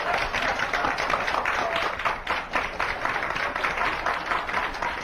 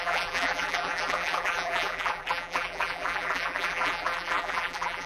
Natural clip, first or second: first